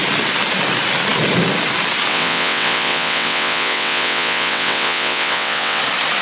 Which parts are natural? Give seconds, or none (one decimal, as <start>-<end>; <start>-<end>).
0.0-2.1; 5.8-6.2